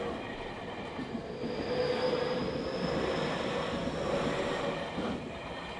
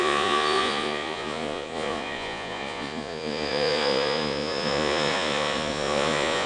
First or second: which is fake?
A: second